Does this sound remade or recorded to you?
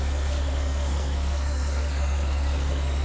remade